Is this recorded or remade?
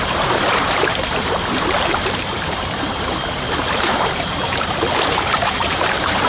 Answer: remade